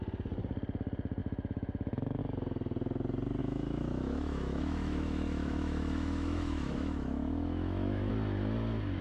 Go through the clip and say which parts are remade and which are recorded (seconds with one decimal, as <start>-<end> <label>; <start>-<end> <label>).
0.0-1.2 recorded; 1.2-2.2 remade; 2.2-3.4 recorded; 3.4-8.1 remade; 8.1-9.0 recorded